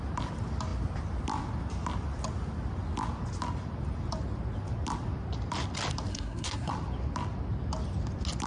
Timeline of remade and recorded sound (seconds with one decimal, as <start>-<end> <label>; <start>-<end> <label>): 0.0-6.1 recorded; 6.1-6.7 remade; 6.7-8.5 recorded